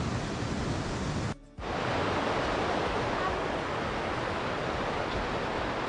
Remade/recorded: recorded